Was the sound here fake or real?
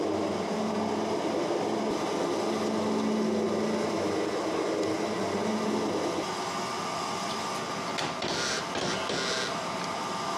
real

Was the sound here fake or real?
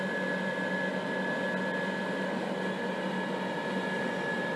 real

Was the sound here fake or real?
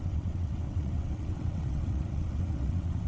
fake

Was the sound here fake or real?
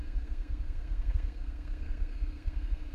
fake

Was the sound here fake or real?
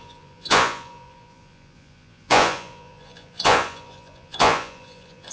fake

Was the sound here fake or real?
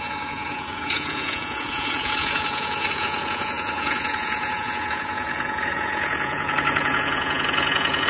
fake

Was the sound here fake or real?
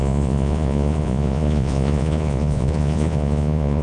fake